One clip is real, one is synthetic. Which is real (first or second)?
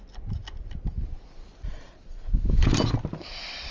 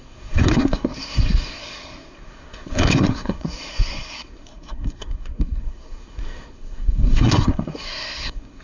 first